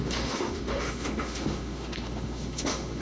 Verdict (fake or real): fake